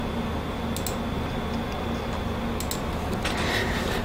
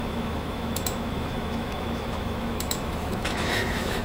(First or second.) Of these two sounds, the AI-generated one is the second